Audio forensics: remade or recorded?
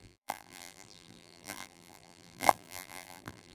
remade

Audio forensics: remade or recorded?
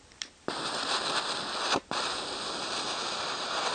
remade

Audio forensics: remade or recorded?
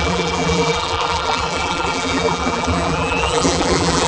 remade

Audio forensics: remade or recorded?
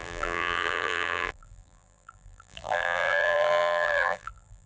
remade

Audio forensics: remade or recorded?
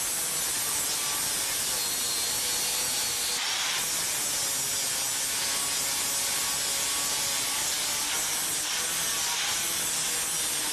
recorded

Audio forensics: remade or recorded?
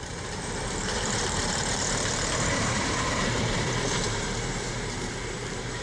remade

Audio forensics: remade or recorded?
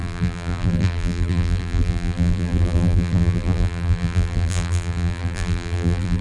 remade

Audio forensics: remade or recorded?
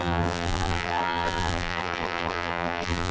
remade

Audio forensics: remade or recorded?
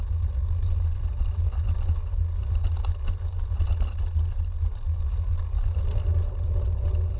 recorded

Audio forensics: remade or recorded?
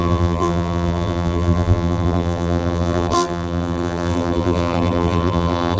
remade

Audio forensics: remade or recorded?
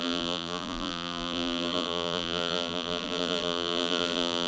remade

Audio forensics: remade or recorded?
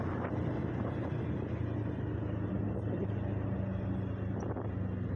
recorded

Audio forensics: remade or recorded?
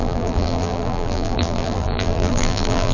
remade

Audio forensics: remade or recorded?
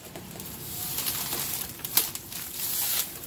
remade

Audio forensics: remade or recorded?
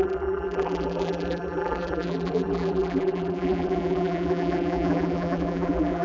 remade